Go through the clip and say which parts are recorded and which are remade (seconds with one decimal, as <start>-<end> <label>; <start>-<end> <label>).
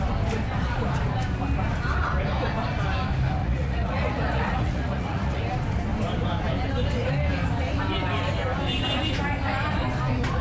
0.0-3.4 recorded; 3.4-5.4 remade; 5.4-10.4 recorded